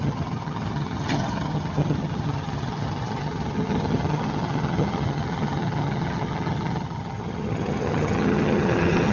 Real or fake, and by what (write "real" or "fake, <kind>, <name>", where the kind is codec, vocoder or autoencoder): fake, vocoder, HiFi-GAN